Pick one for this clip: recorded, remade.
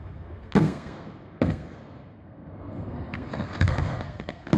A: remade